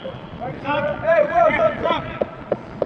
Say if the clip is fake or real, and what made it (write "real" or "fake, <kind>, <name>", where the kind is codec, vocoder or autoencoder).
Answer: fake, vocoder, Vocos